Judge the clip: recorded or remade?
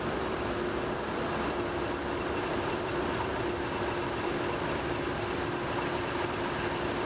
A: recorded